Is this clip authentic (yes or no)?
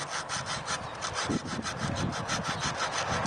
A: yes